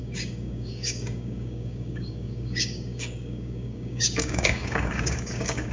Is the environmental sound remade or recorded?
remade